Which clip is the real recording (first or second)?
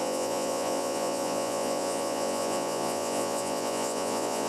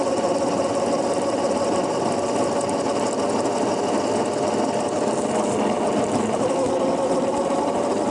second